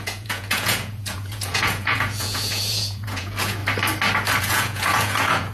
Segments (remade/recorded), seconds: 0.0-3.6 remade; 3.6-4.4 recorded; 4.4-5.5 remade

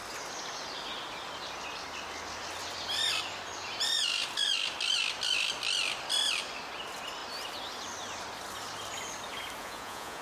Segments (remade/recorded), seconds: 0.0-9.6 recorded; 9.6-10.2 remade

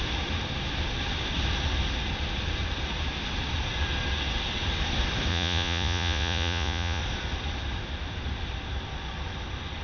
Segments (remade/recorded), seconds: 0.0-5.3 recorded; 5.3-7.0 remade; 7.0-9.8 recorded

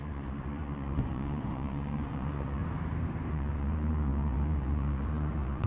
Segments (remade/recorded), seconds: 0.0-2.6 remade; 2.6-3.3 recorded; 3.3-5.7 remade

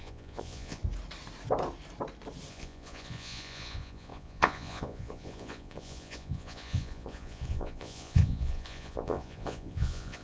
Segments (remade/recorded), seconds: 0.0-0.8 remade; 0.8-2.5 recorded; 2.5-10.2 remade

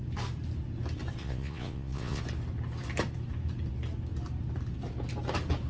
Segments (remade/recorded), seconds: 0.0-1.2 recorded; 1.2-2.2 remade; 2.2-5.7 recorded

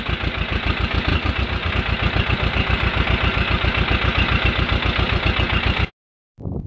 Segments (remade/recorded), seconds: 0.0-1.1 recorded; 1.1-1.7 remade; 1.7-6.7 recorded